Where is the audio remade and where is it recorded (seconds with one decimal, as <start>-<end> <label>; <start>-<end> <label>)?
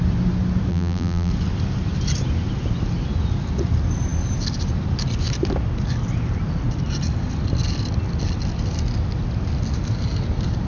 0.0-0.7 recorded; 0.7-1.3 remade; 1.3-10.7 recorded